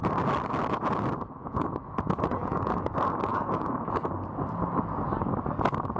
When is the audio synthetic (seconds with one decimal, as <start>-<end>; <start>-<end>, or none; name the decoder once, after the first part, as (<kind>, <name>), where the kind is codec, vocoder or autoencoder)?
1.4-2.9 (vocoder, Vocos); 3.3-4.1